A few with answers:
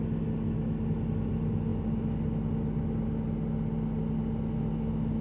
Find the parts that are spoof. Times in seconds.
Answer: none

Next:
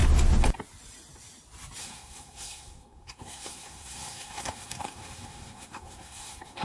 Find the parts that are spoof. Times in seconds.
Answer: 1.8-6.6 (codec, SNAC)

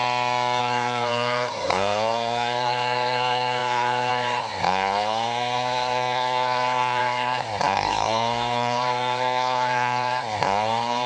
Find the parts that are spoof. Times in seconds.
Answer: 0.6-11.1 (codec, SNAC)

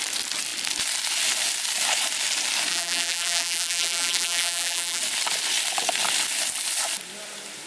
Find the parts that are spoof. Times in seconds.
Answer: 2.7-5.0 (vocoder, BigVGAN v2)

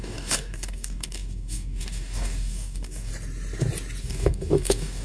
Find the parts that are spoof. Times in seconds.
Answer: 0.0-3.1 (codec, DAC); 4.0-5.0

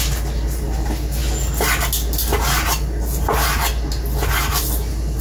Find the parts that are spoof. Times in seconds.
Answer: none

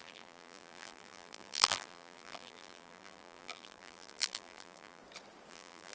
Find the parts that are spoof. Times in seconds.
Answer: 0.0-5.0 (vocoder, BigVGAN v2); 5.5-5.9

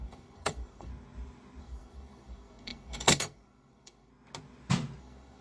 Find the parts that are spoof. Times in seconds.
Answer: 0.0-0.9 (codec, SNAC); 1.6-4.1; 5.0-5.4